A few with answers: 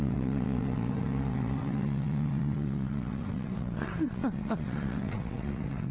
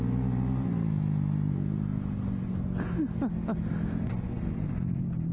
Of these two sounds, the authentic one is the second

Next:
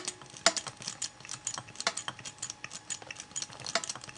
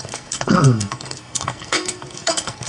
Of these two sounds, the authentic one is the first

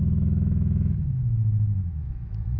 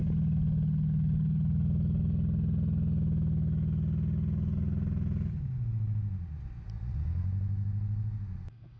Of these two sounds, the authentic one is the second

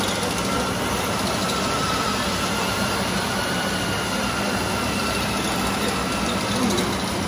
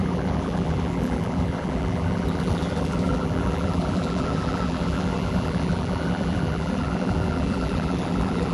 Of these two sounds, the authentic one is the first